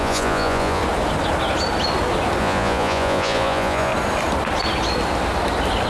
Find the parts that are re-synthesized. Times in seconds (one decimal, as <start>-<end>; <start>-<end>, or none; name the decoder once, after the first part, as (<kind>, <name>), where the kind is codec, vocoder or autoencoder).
0.0-0.8 (vocoder, Vocos); 2.4-3.9